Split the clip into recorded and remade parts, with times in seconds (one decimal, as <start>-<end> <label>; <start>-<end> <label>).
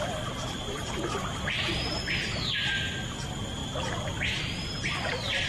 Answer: 0.0-3.6 recorded; 3.6-5.5 remade